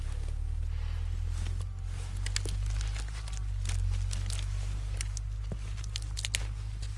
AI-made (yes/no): no